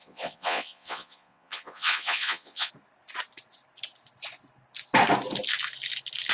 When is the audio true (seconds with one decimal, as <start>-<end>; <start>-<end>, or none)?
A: 2.7-6.3